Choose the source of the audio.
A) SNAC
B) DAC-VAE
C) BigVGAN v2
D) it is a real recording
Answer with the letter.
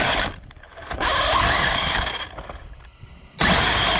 C